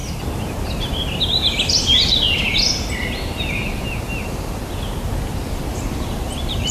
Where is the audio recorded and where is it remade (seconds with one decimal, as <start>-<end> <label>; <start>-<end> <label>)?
0.0-4.0 recorded; 4.0-4.6 remade; 4.6-5.7 recorded; 5.7-6.7 remade